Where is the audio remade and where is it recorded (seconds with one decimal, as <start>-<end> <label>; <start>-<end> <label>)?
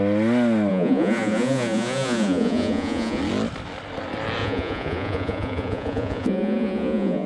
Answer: 0.0-0.7 recorded; 0.7-3.2 remade; 3.2-4.4 recorded; 4.4-7.3 remade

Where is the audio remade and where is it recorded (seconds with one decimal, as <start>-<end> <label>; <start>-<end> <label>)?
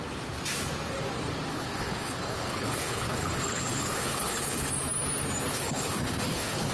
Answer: 0.0-1.5 recorded; 1.5-4.7 remade; 4.7-5.5 recorded; 5.5-6.7 remade